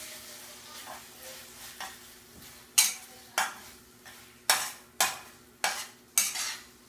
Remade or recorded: recorded